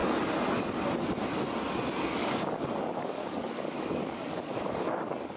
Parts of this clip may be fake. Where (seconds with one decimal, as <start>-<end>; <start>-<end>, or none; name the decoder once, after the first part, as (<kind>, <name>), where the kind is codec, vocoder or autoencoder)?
2.2-5.4 (codec, DAC)